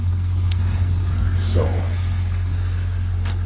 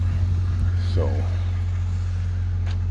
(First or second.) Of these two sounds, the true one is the second